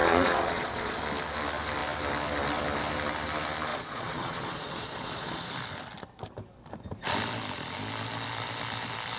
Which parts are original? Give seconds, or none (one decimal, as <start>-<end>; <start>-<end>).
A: 1.0-3.7; 5.5-9.2